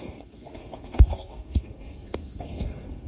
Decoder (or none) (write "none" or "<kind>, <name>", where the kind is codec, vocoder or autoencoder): codec, SNAC